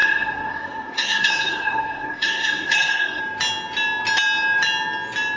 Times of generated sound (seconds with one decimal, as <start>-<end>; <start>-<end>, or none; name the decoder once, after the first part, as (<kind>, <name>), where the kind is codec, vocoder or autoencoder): 0.0-3.2 (codec, SNAC)